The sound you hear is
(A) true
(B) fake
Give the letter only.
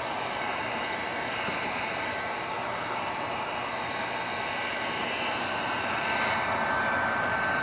A